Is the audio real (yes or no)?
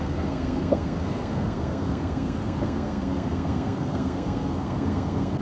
no